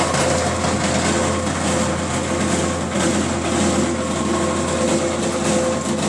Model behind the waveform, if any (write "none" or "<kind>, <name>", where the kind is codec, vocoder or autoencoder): none